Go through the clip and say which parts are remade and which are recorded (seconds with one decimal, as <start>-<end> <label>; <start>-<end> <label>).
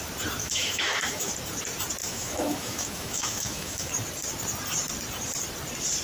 0.0-0.4 recorded; 0.4-1.3 remade; 1.3-2.0 recorded; 2.0-3.9 remade; 3.9-6.0 recorded